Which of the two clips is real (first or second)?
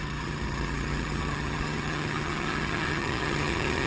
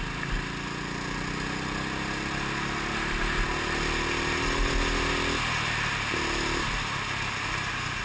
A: second